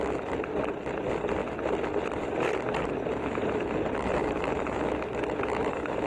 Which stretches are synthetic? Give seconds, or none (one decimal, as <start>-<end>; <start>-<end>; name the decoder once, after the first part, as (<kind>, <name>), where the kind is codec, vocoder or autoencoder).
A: 4.2-6.1 (autoencoder, DAC-VAE)

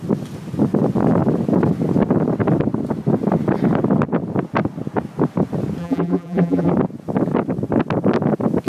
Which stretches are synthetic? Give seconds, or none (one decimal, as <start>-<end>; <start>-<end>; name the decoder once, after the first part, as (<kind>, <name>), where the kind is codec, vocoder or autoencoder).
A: 5.8-6.7 (vocoder, BigVGAN v2)

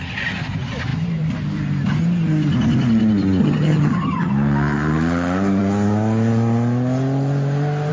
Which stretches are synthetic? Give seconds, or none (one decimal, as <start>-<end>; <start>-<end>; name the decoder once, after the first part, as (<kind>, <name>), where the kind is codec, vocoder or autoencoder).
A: 3.4-4.3 (vocoder, HiFi-GAN)

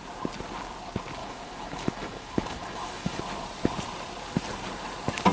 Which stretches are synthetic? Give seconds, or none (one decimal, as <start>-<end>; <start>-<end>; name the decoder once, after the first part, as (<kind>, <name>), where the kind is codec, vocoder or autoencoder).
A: 1.2-3.2 (autoencoder, DAC-VAE)

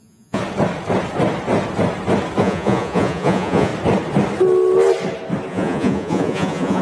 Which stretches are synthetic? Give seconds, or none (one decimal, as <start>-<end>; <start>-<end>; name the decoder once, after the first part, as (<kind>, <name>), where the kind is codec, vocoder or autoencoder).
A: 0.0-0.4 (vocoder, Vocos); 2.4-3.7; 5.5-6.8